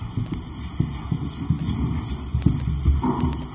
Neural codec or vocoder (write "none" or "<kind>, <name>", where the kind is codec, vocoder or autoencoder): none